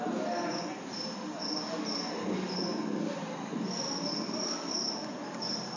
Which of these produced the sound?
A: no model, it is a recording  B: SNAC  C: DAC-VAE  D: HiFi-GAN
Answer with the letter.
A